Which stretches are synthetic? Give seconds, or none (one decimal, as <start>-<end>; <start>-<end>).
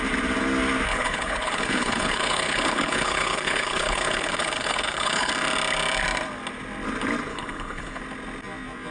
0.9-5.3; 7.3-8.0